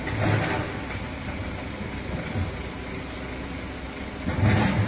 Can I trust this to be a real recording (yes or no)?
yes